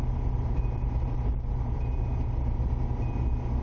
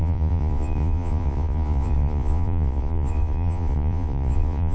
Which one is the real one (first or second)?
first